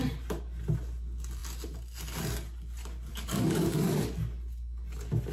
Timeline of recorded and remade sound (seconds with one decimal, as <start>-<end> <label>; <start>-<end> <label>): 0.0-3.1 recorded; 3.1-4.2 remade; 4.2-5.3 recorded